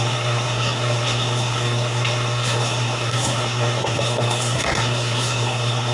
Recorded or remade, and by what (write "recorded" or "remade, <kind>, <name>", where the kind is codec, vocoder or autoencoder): remade, codec, SNAC